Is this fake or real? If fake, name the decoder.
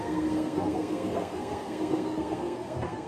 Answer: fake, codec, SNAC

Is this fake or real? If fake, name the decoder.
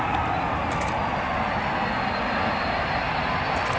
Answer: real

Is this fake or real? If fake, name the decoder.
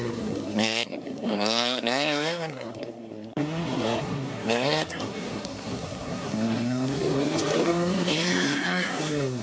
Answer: fake, codec, SNAC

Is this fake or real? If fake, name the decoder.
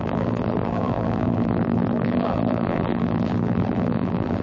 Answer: fake, vocoder, BigVGAN v2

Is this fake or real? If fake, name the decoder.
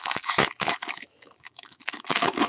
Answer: fake, autoencoder, DAC-VAE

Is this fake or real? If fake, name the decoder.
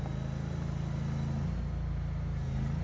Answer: real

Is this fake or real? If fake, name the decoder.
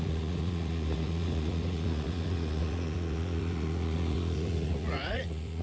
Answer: fake, vocoder, Vocos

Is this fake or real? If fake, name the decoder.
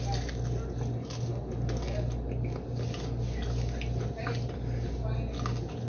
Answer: real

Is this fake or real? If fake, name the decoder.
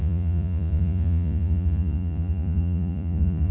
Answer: fake, vocoder, Vocos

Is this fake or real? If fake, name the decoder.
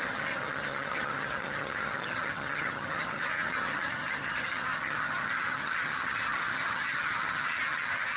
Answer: fake, vocoder, HiFi-GAN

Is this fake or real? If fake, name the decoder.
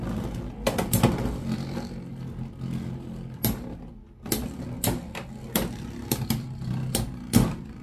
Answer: real